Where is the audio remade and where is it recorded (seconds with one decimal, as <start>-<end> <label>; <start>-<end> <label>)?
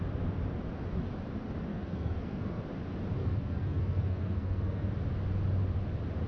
0.0-1.7 recorded; 1.7-2.6 remade; 2.6-3.2 recorded; 3.2-4.9 remade; 4.9-6.3 recorded